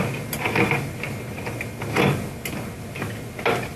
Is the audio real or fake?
real